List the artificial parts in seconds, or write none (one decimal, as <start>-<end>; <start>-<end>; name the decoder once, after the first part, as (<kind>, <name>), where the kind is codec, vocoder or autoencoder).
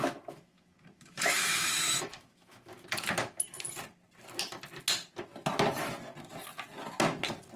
0.0-2.7 (autoencoder, DAC-VAE)